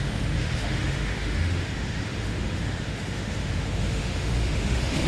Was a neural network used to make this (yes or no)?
yes